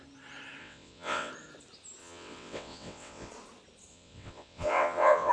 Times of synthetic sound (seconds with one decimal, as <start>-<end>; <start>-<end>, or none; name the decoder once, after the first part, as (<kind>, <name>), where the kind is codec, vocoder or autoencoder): 0.6-1.3 (vocoder, WaveNeXt); 2.0-3.3; 3.9-5.3